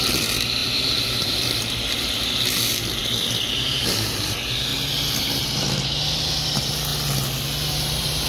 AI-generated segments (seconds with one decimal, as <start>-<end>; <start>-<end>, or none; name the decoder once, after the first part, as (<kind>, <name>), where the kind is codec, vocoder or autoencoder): 0.0-4.7 (vocoder, BigVGAN v2); 5.2-6.9; 7.7-8.3